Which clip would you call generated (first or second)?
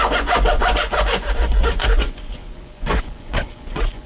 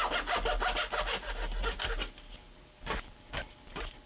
first